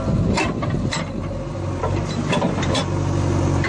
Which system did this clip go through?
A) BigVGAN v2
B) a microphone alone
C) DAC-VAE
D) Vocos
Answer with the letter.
B